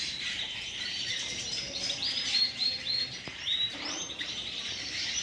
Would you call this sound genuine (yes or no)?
no